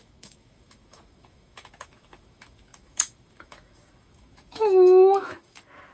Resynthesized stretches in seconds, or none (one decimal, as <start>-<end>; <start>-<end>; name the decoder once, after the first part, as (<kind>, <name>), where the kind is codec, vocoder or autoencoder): 0.0-5.9 (autoencoder, DAC-VAE)